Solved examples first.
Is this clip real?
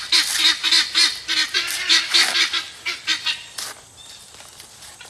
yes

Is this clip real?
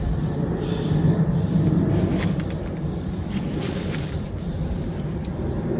no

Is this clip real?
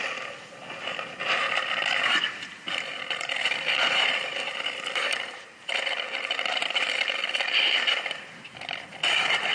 no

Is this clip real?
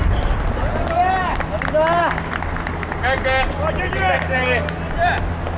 yes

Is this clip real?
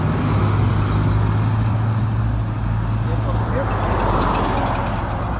yes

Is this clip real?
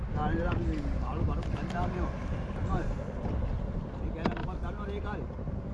yes